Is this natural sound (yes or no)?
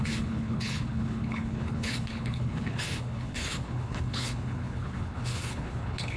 no